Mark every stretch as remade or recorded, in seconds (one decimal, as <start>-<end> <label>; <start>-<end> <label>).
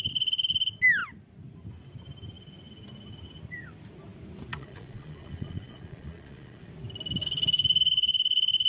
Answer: 0.0-4.5 recorded; 4.5-6.7 remade; 6.7-8.7 recorded